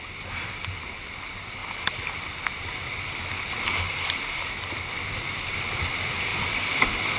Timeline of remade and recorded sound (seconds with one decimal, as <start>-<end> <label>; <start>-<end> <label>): 0.0-7.2 recorded